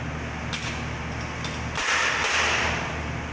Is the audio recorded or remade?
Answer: recorded